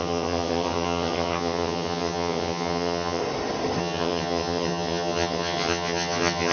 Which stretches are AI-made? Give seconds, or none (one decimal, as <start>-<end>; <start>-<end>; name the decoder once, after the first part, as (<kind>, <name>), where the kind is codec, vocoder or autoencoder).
0.0-3.2 (vocoder, HiFi-GAN); 3.8-6.5